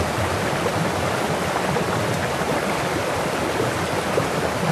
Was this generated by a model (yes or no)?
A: no